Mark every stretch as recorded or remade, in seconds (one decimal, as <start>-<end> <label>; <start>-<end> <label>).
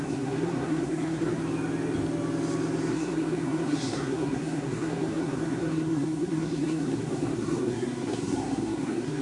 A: 0.0-1.4 remade; 1.4-2.9 recorded; 2.9-9.2 remade